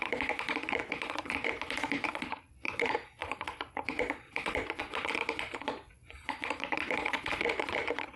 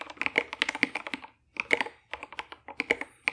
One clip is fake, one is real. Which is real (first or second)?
second